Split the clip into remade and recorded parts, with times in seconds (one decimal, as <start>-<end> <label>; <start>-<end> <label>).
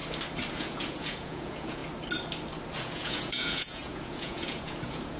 0.0-0.5 recorded; 0.5-1.8 remade; 1.8-2.8 recorded; 2.8-5.2 remade